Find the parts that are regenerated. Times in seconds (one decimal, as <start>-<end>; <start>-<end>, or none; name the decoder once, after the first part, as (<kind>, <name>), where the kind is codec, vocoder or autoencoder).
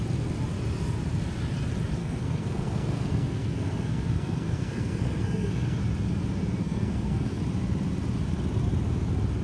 2.0-5.8 (codec, SNAC); 6.6-7.4